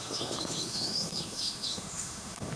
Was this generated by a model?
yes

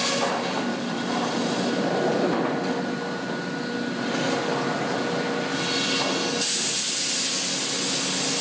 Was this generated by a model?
no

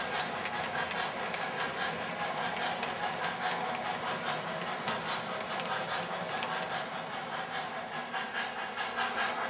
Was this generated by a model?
no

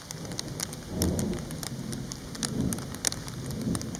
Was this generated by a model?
no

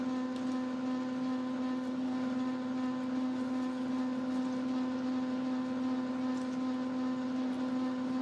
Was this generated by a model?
no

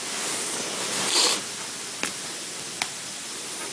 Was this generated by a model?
no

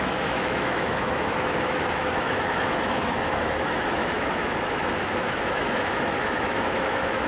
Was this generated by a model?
yes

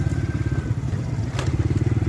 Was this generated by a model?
no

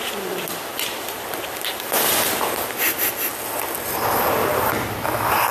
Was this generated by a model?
no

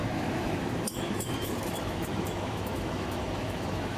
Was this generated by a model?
yes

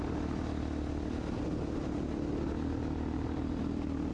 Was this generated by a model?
no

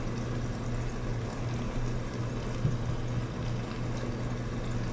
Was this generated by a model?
no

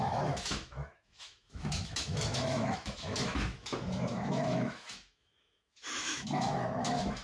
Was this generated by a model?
yes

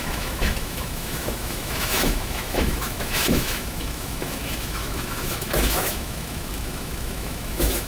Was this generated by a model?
yes